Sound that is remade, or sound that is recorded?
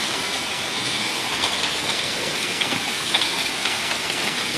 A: remade